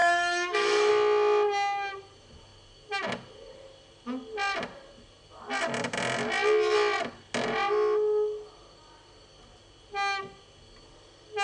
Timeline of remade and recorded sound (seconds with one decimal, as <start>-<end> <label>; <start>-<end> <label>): 0.0-0.9 remade; 0.9-11.4 recorded